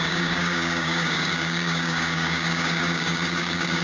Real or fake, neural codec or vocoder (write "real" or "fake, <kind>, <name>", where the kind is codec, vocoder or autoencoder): fake, codec, DAC